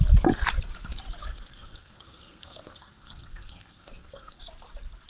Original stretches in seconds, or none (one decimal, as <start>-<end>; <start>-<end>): 0.0-1.3; 4.4-5.1